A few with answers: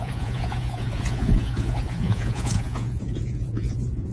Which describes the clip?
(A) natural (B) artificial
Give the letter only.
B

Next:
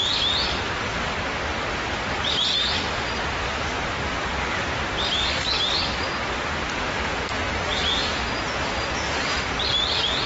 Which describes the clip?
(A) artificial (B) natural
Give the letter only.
B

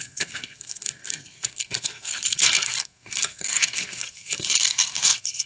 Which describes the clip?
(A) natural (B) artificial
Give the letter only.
B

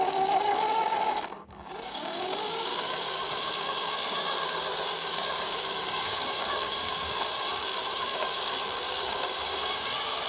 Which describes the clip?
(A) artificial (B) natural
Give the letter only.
A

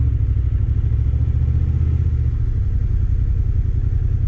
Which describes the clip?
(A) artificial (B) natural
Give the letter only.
B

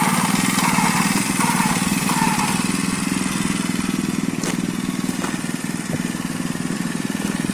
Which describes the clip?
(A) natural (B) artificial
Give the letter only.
A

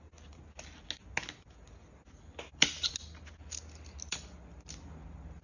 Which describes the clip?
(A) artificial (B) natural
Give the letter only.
B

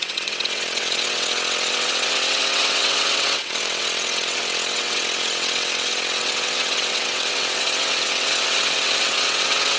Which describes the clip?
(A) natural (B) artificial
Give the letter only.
B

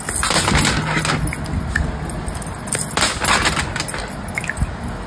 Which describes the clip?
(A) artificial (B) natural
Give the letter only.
B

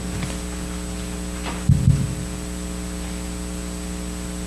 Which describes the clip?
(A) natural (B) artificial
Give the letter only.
A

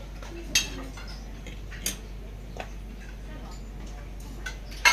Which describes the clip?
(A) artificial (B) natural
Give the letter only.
B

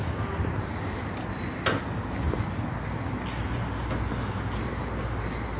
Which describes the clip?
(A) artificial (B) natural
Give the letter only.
B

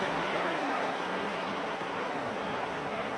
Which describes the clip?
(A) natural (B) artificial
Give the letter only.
B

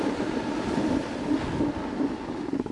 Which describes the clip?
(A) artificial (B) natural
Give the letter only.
B